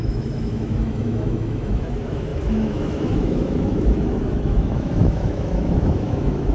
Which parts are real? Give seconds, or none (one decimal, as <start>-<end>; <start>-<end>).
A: none